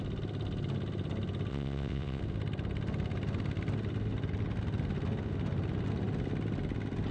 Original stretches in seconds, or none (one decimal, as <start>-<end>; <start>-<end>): 0.0-1.5; 2.2-7.1